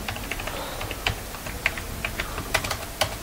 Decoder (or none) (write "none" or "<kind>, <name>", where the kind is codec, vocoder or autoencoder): none